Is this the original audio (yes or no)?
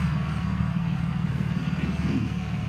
no